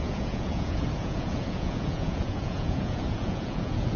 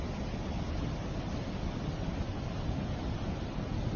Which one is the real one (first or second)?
second